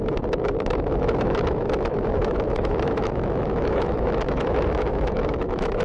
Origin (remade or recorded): remade